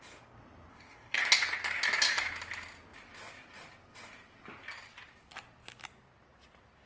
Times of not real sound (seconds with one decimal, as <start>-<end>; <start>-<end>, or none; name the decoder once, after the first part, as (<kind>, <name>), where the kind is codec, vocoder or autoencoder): 0.7-1.2 (codec, DAC)